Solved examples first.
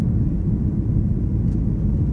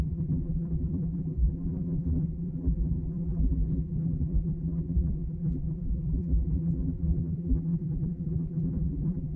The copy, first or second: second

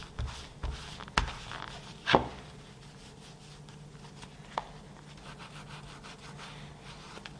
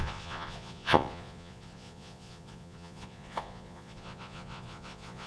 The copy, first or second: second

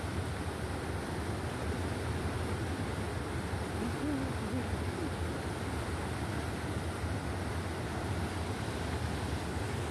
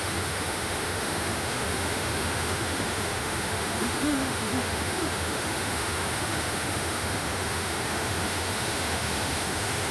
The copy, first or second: second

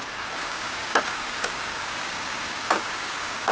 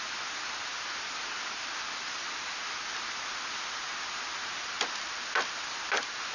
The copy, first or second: first